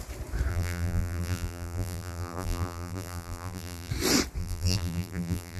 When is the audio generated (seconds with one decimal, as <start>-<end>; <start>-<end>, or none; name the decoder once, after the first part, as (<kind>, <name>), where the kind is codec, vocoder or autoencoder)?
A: 0.5-3.9 (vocoder, BigVGAN v2); 4.4-5.6